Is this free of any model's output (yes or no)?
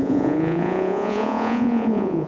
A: no